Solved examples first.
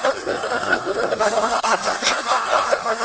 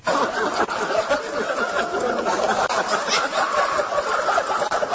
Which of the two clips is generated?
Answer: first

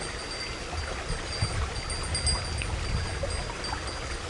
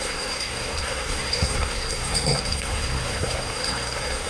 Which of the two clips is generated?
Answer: second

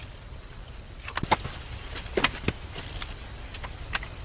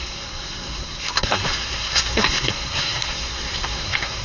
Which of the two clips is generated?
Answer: second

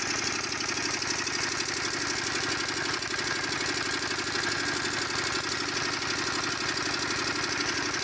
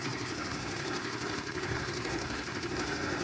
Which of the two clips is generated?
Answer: second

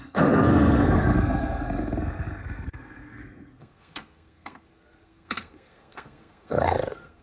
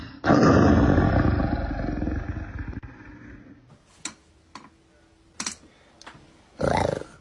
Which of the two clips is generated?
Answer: first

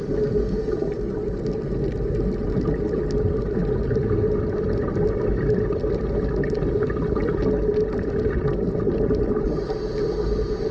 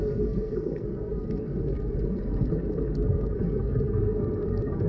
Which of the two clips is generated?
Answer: second